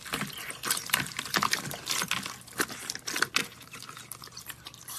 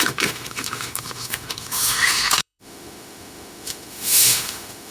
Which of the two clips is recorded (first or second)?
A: first